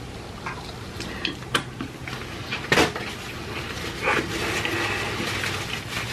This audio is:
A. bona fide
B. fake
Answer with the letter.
A